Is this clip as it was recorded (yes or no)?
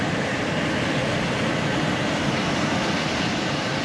yes